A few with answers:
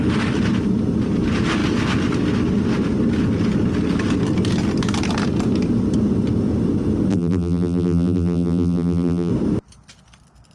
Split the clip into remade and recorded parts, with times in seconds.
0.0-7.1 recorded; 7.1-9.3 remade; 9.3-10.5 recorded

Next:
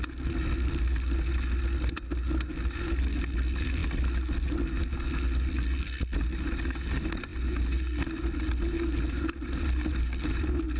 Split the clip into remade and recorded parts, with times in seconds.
0.0-10.8 recorded

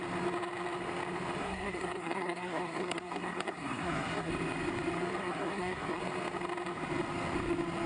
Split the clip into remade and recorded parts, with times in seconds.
0.0-1.4 recorded; 1.4-4.3 remade; 4.3-5.2 recorded; 5.2-6.0 remade; 6.0-7.9 recorded

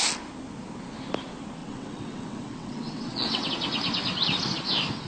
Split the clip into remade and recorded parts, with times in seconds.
0.0-1.6 recorded; 1.6-3.5 remade; 3.5-5.1 recorded

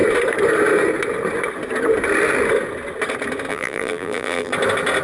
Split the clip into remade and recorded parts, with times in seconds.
0.0-3.5 recorded; 3.5-4.5 remade; 4.5-5.0 recorded

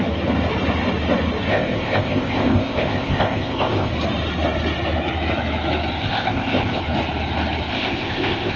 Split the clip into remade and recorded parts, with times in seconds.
0.0-1.5 recorded; 1.5-3.9 remade; 3.9-6.0 recorded; 6.0-6.8 remade; 6.8-7.7 recorded; 7.7-8.6 remade

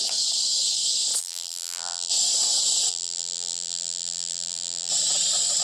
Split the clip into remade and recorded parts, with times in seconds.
0.0-1.2 recorded; 1.2-2.1 remade; 2.1-2.9 recorded; 2.9-4.9 remade; 4.9-5.6 recorded

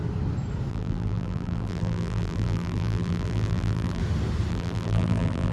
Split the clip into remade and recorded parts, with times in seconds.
0.0-0.7 recorded; 0.7-4.0 remade; 4.0-4.5 recorded; 4.5-5.5 remade